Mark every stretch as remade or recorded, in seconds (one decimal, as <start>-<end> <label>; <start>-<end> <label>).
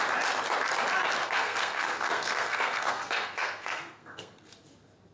0.0-1.2 recorded; 1.2-4.3 remade; 4.3-5.1 recorded